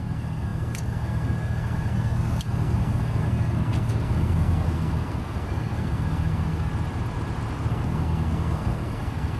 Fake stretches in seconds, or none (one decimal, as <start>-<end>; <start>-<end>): 0.0-6.7; 7.7-9.4